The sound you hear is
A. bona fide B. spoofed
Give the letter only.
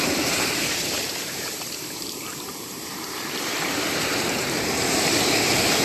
B